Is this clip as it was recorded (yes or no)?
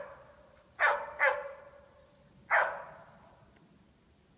yes